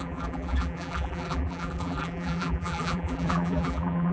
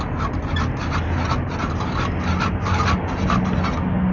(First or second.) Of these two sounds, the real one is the second